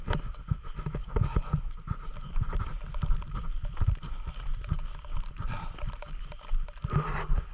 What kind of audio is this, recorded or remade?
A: recorded